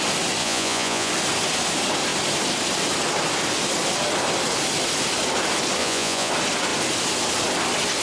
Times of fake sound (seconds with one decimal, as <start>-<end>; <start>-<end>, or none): 0.4-1.1; 5.8-6.3